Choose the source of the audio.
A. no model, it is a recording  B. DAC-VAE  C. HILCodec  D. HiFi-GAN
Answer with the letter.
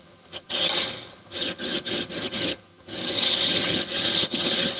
D